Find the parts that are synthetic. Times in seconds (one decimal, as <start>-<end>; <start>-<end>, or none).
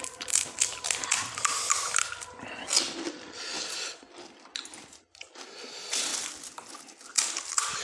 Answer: none